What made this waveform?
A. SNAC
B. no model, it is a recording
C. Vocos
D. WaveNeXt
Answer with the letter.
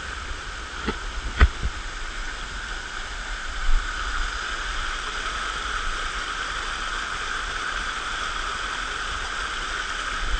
B